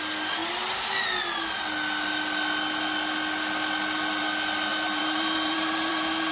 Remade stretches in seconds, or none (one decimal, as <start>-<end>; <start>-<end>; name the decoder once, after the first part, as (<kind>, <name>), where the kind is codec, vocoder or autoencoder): 4.7-6.3 (vocoder, BigVGAN v2)